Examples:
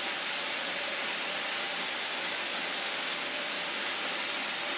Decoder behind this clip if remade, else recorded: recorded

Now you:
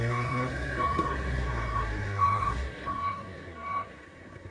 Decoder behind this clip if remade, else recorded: remade, codec, SNAC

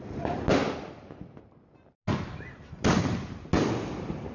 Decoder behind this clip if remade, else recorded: recorded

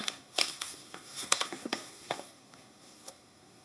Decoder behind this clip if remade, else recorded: remade, codec, SNAC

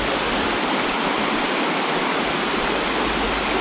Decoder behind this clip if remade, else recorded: recorded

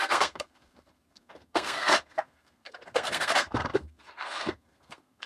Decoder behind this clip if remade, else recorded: remade, codec, SNAC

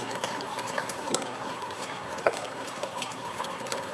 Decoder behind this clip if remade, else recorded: remade, codec, SNAC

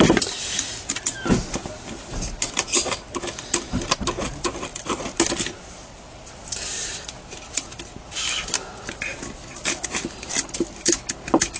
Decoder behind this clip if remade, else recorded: recorded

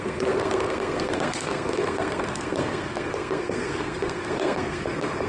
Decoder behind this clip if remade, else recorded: remade, codec, SNAC